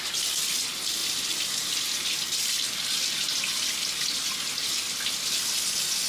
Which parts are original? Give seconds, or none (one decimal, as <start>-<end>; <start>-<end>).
0.0-6.1